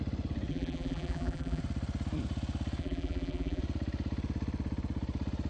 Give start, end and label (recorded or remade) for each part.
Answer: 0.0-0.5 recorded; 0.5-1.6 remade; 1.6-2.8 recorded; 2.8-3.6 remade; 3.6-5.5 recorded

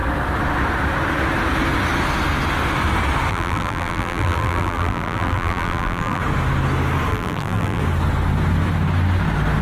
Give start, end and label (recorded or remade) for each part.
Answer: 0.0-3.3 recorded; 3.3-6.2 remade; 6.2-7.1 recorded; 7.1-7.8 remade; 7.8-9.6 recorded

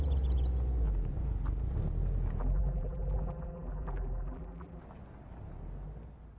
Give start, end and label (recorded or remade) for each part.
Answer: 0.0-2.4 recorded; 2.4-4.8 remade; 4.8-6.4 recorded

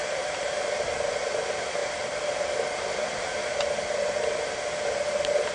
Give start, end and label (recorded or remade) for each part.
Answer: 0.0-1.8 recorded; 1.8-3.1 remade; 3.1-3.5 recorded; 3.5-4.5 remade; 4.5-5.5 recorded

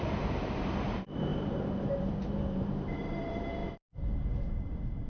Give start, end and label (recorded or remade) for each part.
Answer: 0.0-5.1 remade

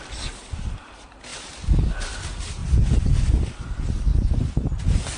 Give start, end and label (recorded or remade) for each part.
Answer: 0.0-2.6 recorded; 2.6-3.4 remade; 3.4-4.1 recorded; 4.1-4.8 remade; 4.8-5.2 recorded

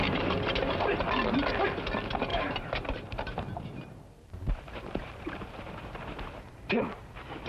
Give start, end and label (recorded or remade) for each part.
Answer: 0.0-1.0 remade; 1.0-2.3 recorded; 2.3-6.8 remade; 6.8-7.5 recorded